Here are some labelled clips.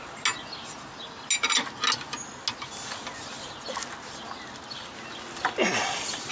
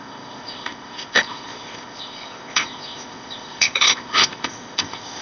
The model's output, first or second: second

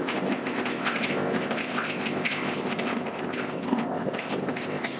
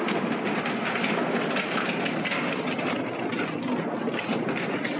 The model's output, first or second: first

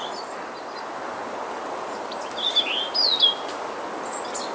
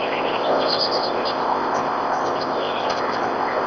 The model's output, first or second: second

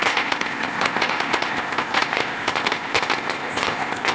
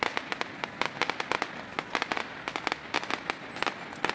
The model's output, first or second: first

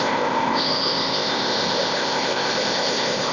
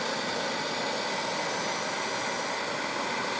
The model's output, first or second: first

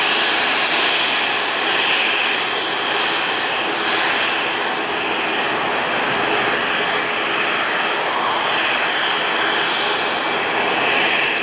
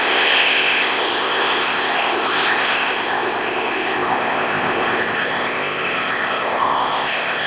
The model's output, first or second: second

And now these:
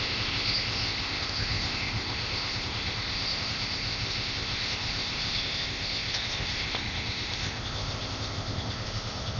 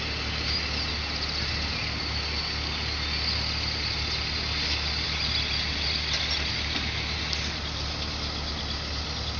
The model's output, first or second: first